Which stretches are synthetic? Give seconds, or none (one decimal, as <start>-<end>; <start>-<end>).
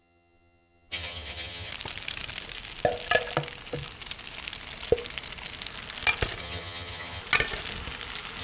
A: 0.0-1.7; 6.4-7.2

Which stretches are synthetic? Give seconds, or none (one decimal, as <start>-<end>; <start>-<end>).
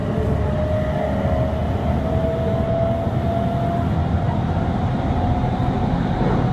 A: none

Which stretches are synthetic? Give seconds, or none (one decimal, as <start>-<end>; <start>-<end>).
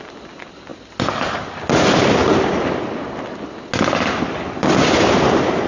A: none